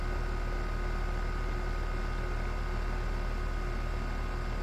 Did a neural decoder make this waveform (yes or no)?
no